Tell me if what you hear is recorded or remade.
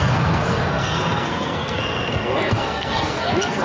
remade